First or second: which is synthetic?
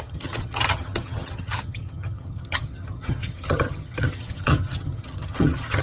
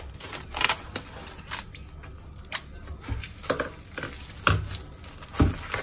first